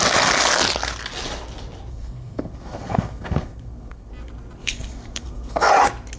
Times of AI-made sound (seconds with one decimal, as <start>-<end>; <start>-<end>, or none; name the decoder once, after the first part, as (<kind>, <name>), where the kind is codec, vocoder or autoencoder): 1.9-4.1 (codec, SNAC); 4.6-5.7